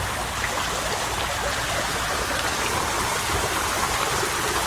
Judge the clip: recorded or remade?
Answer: recorded